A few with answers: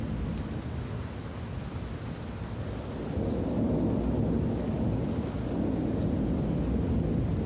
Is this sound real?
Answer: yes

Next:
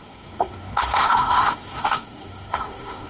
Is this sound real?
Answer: no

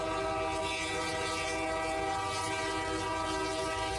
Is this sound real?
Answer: yes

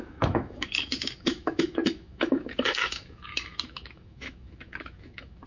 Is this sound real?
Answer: no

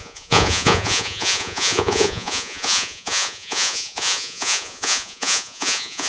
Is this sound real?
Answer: no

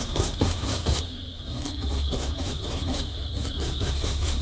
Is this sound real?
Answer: no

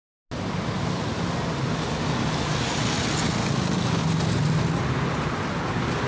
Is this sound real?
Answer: yes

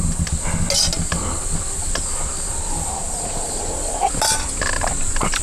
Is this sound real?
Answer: yes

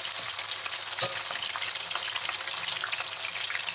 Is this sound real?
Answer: yes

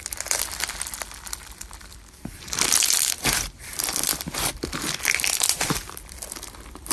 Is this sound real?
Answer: no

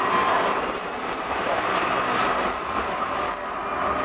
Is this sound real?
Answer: yes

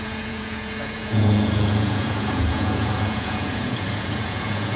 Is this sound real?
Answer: no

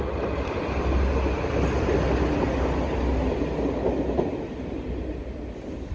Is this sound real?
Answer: yes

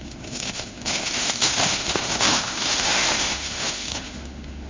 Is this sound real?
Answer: no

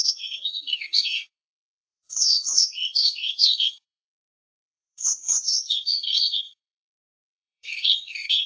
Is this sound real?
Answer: no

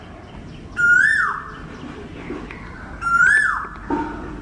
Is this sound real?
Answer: no